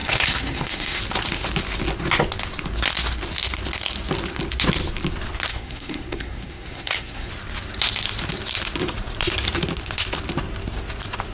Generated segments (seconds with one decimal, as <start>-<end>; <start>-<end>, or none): 0.0-1.0; 5.5-7.3